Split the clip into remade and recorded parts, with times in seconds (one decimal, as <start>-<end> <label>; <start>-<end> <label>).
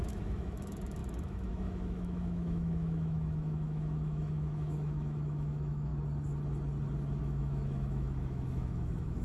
0.0-5.9 remade; 5.9-7.2 recorded; 7.2-9.2 remade